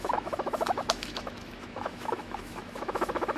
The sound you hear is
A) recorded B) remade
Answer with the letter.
B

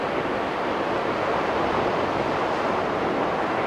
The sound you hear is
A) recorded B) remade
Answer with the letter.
A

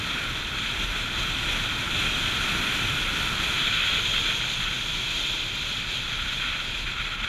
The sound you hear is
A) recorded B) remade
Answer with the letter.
A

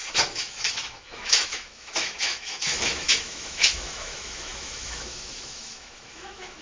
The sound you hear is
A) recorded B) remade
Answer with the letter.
B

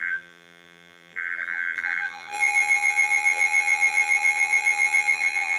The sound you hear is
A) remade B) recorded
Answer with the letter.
A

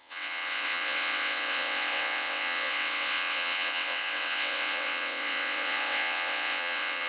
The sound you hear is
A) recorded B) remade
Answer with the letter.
B